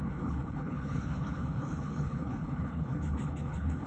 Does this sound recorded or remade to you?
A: remade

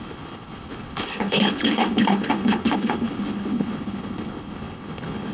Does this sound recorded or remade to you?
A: remade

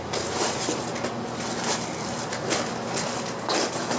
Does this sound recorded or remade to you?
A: recorded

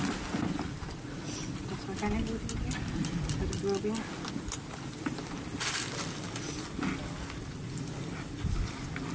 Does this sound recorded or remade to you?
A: recorded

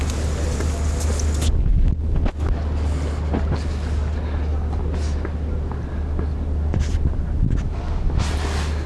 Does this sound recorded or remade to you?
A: recorded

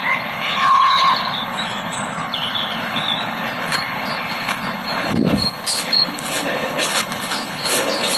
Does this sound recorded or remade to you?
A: remade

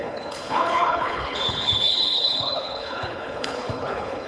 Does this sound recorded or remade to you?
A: remade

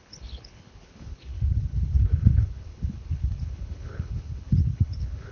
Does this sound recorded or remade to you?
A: remade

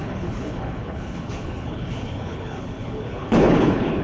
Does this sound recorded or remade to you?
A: remade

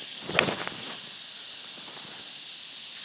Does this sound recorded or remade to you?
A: recorded